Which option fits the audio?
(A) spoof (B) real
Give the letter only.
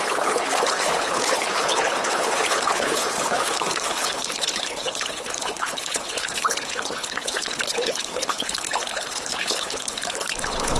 A